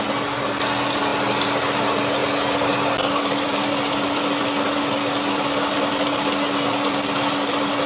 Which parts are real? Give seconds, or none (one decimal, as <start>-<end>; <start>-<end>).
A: 0.0-7.9